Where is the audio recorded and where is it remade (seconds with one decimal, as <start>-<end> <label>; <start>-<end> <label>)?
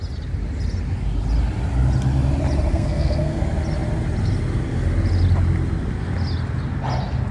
0.0-2.7 recorded; 2.7-3.4 remade; 3.4-7.3 recorded